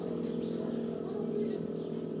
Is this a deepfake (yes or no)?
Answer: no